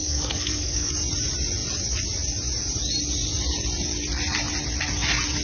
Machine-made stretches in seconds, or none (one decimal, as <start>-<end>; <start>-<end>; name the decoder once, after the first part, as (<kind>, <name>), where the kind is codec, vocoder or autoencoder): 0.0-0.9 (codec, SNAC)